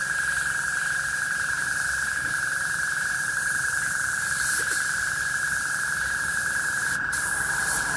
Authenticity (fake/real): real